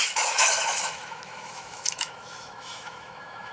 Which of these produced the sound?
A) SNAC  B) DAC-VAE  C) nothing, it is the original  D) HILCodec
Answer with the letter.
B